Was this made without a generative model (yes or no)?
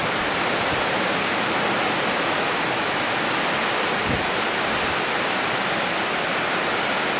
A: yes